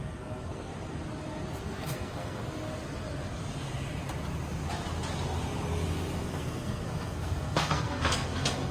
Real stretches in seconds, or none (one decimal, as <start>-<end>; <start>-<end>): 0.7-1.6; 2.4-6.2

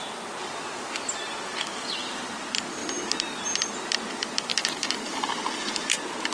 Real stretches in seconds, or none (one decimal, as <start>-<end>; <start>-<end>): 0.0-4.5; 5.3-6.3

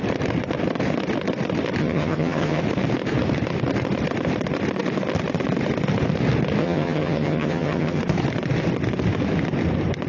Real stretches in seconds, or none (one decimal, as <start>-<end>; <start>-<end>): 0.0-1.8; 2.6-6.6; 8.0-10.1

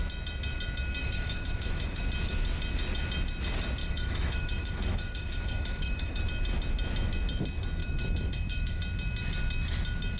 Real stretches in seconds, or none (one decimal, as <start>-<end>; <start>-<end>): 0.0-1.0; 2.0-3.8; 6.2-7.8; 8.8-10.2